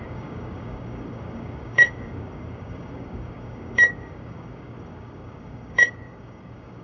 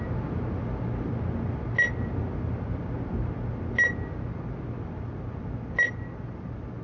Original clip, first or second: second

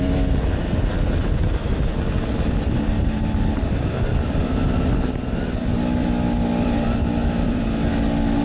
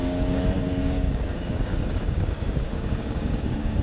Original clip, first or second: first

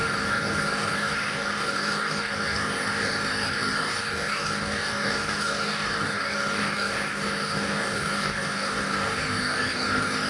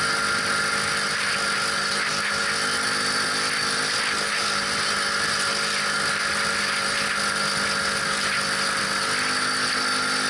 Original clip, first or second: second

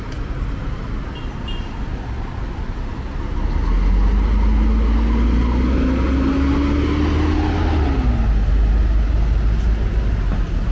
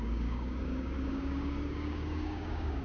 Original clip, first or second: first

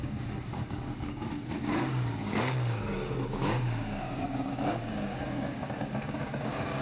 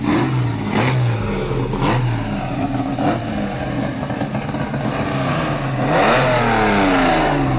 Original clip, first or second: second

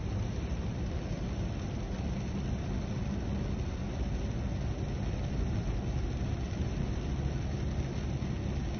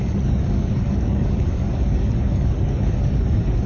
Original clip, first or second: first